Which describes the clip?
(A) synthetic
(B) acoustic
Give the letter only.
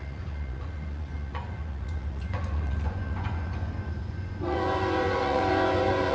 A